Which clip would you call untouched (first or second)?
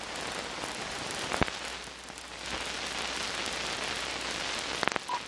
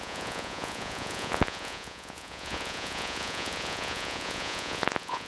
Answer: first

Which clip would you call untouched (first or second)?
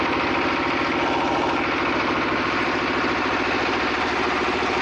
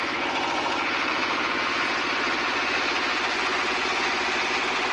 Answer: first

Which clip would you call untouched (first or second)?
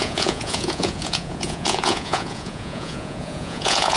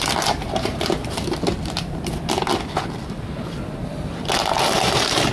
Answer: second